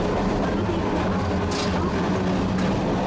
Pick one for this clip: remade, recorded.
recorded